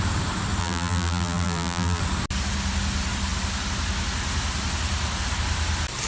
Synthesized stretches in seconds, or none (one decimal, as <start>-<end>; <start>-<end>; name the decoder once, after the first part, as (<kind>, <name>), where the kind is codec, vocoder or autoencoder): 0.6-2.0 (vocoder, BigVGAN v2)